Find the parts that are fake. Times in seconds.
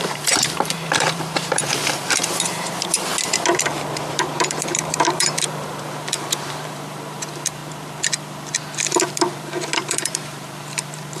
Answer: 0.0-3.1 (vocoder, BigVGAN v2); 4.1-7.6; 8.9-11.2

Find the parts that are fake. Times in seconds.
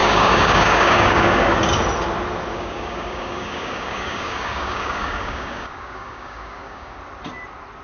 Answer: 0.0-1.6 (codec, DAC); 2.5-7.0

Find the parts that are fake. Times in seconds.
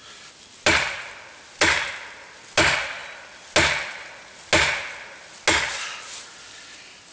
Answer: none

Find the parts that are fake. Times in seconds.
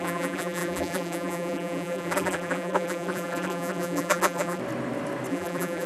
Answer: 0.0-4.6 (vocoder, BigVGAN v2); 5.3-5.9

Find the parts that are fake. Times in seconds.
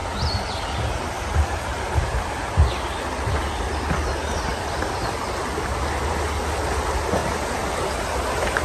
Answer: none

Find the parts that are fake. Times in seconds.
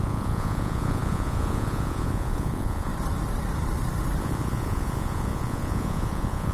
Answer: 0.0-2.9 (vocoder, Vocos); 4.2-6.5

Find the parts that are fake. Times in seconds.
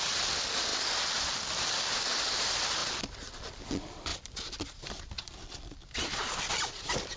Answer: 4.1-6.5 (vocoder, BigVGAN v2)